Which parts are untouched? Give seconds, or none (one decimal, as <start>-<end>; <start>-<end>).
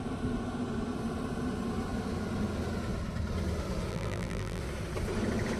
0.0-3.9; 4.6-5.6